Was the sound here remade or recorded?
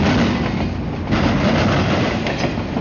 recorded